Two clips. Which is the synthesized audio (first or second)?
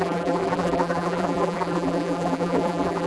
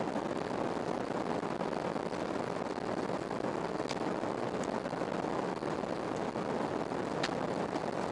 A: first